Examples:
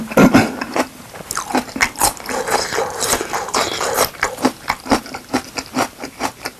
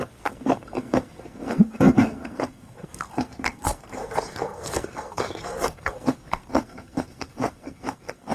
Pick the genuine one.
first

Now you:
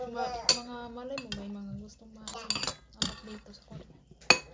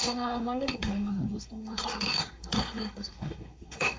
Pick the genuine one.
first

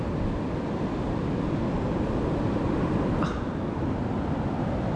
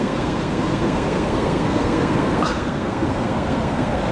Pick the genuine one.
first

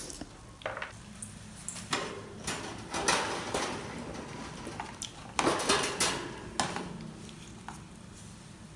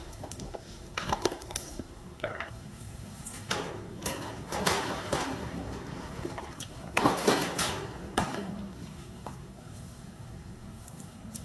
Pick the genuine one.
first